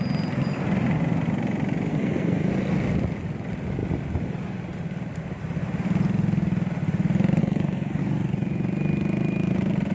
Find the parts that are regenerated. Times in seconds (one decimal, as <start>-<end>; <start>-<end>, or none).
1.9-2.5; 7.4-8.0